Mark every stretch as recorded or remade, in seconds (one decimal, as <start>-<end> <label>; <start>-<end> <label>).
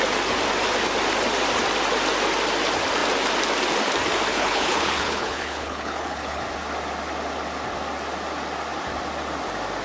0.0-4.3 recorded; 4.3-6.4 remade; 6.4-9.8 recorded